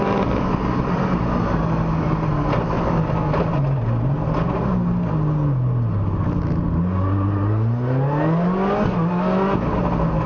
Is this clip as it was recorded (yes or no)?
yes